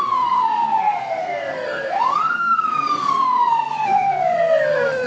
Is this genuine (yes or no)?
no